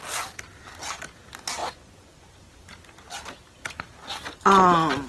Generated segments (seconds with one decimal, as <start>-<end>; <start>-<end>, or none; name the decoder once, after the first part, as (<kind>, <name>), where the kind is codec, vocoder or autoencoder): 1.6-2.7 (vocoder, Vocos)